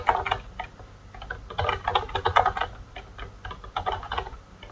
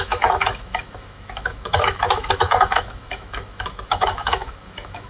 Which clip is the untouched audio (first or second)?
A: first